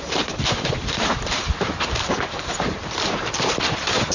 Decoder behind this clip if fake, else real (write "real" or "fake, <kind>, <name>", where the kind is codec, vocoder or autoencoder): fake, vocoder, BigVGAN v2